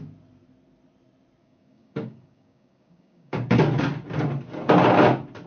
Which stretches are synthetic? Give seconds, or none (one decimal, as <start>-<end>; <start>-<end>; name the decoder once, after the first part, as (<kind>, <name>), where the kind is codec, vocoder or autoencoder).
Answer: 1.4-3.6 (codec, DAC)